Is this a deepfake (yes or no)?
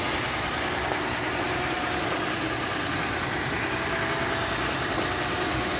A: no